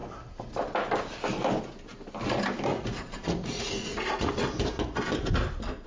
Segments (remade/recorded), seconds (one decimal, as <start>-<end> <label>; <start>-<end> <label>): 0.0-2.7 recorded; 2.7-4.3 remade; 4.3-5.9 recorded